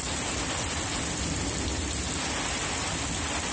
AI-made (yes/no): no